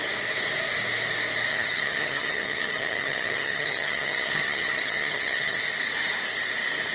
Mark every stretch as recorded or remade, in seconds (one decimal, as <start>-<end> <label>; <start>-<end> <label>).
0.0-1.5 recorded; 1.5-5.6 remade; 5.6-6.9 recorded